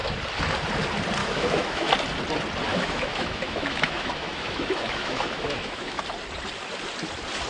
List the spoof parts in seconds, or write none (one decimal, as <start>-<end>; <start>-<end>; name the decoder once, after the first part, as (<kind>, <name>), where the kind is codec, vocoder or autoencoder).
1.2-1.9 (autoencoder, DAC-VAE); 2.7-6.0